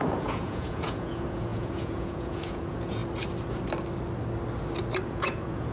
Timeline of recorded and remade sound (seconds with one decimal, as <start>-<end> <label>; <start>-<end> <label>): 0.0-3.0 remade; 3.0-5.1 recorded; 5.1-5.7 remade